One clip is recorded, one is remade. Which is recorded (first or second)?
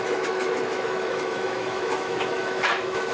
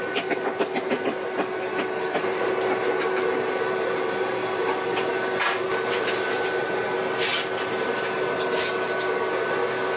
second